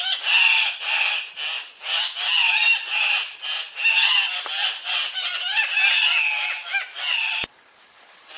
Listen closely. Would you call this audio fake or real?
real